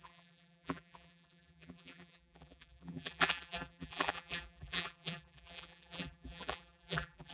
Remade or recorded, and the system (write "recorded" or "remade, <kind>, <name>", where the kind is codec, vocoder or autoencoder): remade, vocoder, BigVGAN v2